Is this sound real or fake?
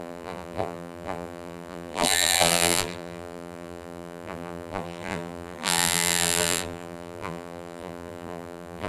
fake